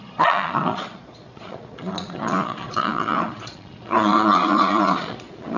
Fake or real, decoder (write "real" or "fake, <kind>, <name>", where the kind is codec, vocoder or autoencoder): fake, vocoder, Vocos